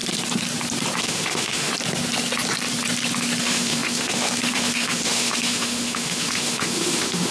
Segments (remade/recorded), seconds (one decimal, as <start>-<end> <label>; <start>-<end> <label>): 0.0-1.0 recorded; 1.0-1.7 remade; 1.7-3.4 recorded; 3.4-7.3 remade